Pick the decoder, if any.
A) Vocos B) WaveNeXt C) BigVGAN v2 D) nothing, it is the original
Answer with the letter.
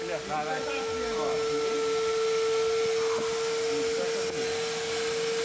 D